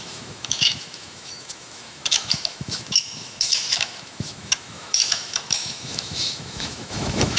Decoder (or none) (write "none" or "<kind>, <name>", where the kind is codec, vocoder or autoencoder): autoencoder, DAC-VAE